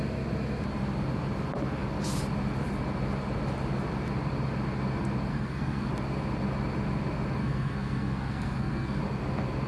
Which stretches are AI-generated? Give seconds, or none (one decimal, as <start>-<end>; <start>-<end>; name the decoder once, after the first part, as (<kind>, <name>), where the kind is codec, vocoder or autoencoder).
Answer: 5.3-5.9 (codec, SNAC); 7.4-9.0